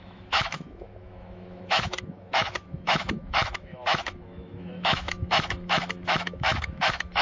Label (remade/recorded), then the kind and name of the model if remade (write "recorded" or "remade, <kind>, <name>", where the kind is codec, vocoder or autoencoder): remade, autoencoder, DAC-VAE